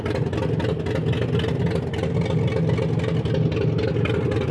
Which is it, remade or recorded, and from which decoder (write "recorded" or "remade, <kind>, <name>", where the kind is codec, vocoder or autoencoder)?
recorded